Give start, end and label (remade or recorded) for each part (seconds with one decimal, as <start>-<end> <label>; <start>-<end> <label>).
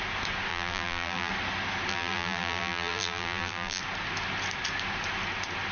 0.0-0.5 recorded; 0.5-1.3 remade; 1.3-1.9 recorded; 1.9-3.8 remade; 3.8-5.7 recorded